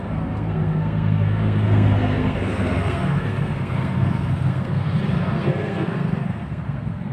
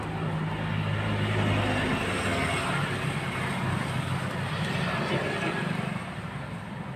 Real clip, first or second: second